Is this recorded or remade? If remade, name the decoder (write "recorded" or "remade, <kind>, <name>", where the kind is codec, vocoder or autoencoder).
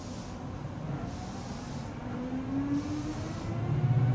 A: recorded